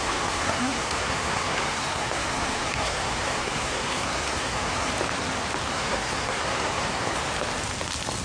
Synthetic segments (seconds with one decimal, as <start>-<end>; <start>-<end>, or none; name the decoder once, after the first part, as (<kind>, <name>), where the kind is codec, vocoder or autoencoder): 0.0-4.9 (codec, SNAC); 5.7-7.2